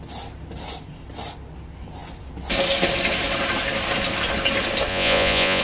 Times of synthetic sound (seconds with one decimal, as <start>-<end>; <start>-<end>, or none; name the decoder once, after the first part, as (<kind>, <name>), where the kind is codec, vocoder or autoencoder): 4.9-5.6 (vocoder, Vocos)